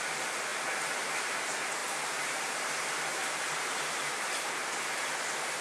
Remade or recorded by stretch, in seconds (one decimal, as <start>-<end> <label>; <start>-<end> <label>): 0.0-1.8 recorded; 1.8-2.5 remade; 2.5-3.1 recorded; 3.1-4.6 remade; 4.6-5.6 recorded